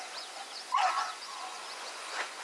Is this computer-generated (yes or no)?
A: yes